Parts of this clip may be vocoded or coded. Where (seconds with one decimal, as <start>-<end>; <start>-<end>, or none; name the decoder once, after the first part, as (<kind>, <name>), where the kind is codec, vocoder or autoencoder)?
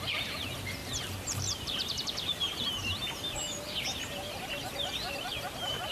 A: 0.8-2.7 (vocoder, BigVGAN v2); 5.3-5.9